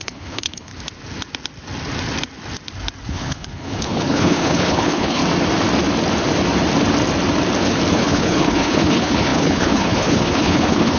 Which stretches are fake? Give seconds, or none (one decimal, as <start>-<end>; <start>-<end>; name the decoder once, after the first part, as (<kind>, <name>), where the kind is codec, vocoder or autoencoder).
0.0-0.7 (codec, HILCodec); 3.1-5.2; 7.9-11.0